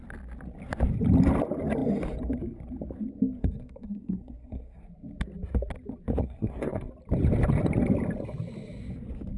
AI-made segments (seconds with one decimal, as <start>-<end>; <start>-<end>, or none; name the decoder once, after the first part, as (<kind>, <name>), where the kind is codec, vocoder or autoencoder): 3.4-4.8 (codec, SNAC); 6.2-6.9